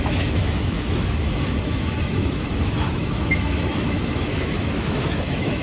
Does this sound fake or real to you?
fake